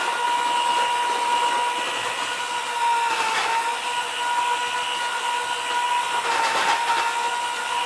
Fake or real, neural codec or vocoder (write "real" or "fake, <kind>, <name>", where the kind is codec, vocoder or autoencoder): real